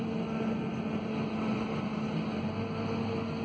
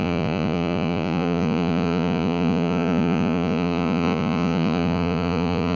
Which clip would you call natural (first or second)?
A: first